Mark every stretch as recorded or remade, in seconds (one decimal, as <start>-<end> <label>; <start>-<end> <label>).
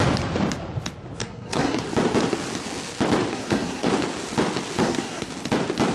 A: 0.0-1.2 recorded; 1.2-1.8 remade; 1.8-3.3 recorded; 3.3-3.9 remade; 3.9-4.8 recorded; 4.8-5.3 remade; 5.3-5.9 recorded